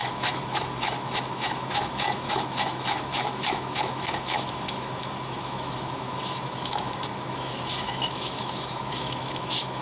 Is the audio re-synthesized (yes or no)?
yes